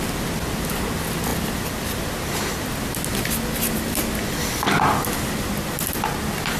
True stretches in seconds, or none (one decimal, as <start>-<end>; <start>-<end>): 0.0-6.6